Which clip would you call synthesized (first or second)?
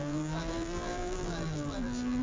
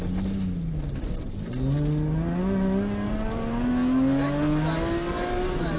first